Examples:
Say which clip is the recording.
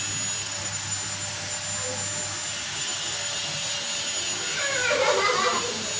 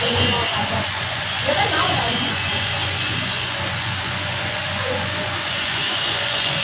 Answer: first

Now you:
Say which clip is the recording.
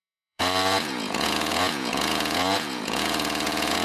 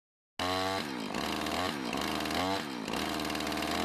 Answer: second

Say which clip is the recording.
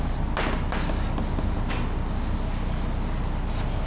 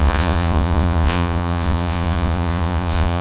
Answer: first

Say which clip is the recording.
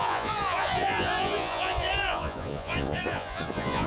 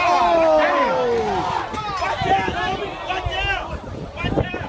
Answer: second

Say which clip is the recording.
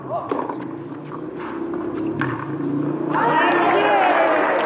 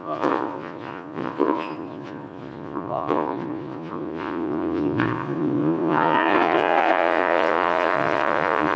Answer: first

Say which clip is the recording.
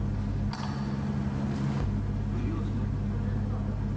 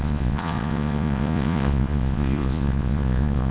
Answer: first